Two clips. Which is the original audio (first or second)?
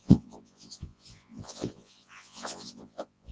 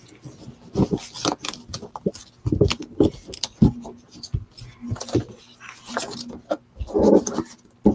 second